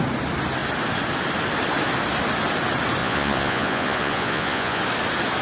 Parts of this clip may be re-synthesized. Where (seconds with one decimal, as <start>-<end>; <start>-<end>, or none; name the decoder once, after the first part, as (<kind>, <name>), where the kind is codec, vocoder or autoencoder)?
3.0-4.8 (vocoder, Vocos)

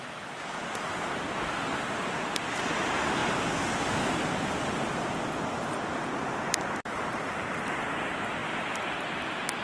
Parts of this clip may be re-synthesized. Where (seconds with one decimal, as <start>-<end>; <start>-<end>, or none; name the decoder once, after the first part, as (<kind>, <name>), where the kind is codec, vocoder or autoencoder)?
0.0-3.2 (vocoder, BigVGAN v2); 3.9-9.6

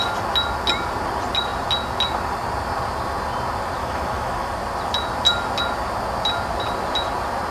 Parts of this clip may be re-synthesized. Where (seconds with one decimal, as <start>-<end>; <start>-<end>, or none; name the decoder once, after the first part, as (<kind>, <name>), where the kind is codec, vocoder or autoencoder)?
3.8-4.5 (autoencoder, DAC-VAE)

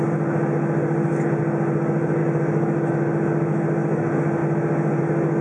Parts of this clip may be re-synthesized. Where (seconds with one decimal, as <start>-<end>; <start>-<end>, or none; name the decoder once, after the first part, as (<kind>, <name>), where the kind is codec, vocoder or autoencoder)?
2.2-2.9 (autoencoder, DAC-VAE)